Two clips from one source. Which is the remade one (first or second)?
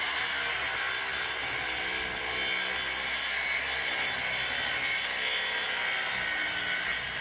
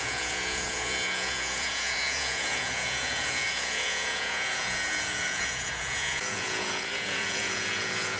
second